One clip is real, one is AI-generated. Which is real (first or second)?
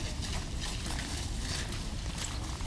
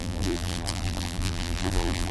first